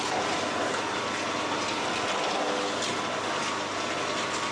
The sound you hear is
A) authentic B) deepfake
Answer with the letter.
A